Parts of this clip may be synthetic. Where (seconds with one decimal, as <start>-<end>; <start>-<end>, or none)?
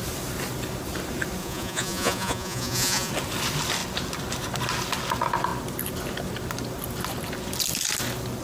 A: 1.4-3.1